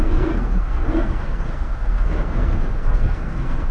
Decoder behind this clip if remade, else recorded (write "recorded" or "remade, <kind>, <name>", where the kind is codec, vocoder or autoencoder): remade, codec, SNAC